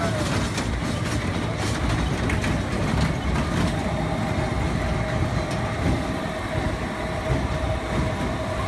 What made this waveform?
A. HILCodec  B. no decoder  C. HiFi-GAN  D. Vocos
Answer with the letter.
B